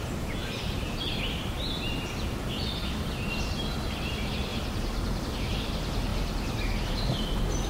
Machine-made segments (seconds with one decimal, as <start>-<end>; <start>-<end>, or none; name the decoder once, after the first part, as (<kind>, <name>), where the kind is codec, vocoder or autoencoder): 0.0-0.4 (vocoder, BigVGAN v2); 2.4-4.5; 5.2-6.1; 6.8-7.7